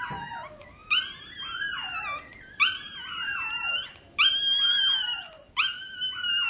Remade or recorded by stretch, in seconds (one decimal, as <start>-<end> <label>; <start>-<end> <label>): 0.0-0.8 recorded; 0.8-4.3 remade; 4.3-6.5 recorded